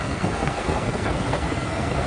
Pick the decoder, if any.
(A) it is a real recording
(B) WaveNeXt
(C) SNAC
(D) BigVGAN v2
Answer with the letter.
C